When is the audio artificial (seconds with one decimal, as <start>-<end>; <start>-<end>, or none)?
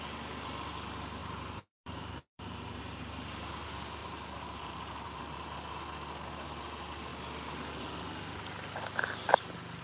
1.2-2.8; 4.0-5.2